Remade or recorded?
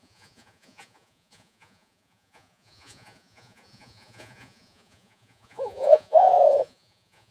remade